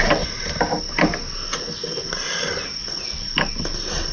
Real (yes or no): yes